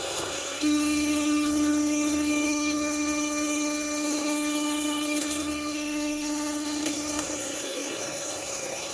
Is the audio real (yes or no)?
no